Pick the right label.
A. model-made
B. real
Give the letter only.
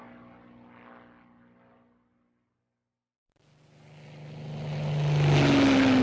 B